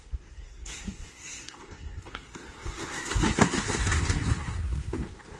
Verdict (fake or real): fake